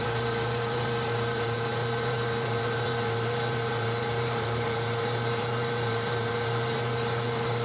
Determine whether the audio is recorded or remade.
remade